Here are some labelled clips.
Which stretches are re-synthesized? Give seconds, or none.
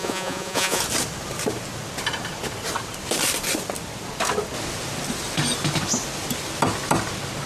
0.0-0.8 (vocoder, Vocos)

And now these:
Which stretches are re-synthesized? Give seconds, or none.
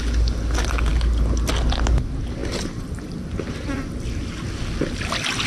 none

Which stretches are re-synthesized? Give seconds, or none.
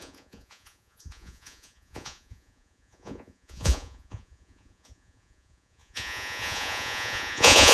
0.0-7.7 (vocoder, Vocos)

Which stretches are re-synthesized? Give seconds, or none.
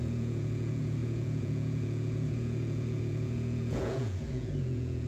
0.0-5.1 (vocoder, Vocos)